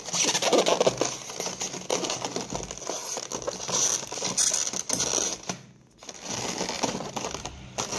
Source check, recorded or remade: recorded